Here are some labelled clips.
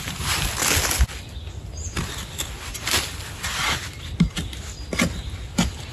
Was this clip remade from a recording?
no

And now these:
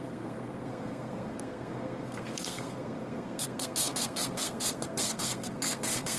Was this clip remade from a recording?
yes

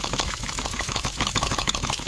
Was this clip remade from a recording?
yes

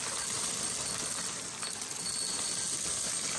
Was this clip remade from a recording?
no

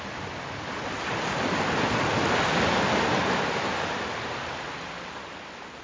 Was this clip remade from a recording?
no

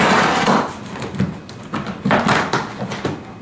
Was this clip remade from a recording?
no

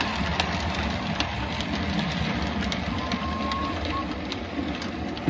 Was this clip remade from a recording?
no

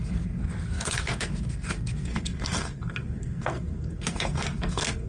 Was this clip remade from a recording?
yes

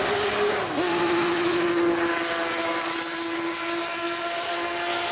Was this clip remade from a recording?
no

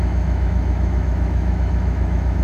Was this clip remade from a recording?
yes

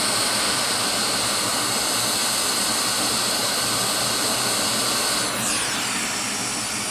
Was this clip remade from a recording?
no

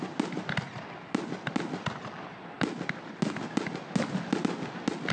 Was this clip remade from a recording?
no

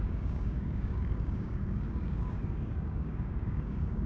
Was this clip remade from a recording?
yes